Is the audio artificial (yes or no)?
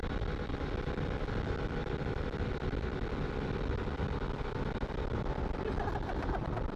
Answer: no